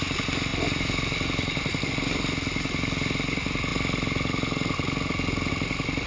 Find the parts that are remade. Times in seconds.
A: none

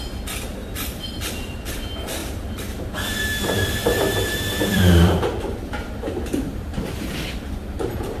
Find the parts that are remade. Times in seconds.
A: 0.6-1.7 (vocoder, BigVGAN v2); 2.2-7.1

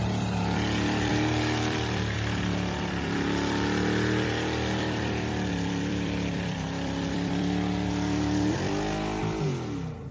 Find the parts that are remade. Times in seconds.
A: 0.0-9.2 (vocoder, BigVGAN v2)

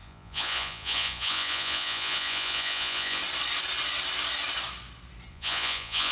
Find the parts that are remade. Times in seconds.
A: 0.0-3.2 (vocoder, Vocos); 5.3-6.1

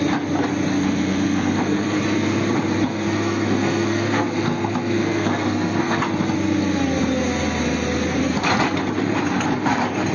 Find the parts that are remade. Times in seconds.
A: 0.7-2.0 (codec, SNAC); 2.9-6.0